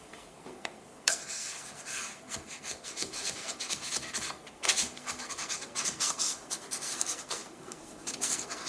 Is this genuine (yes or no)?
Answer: no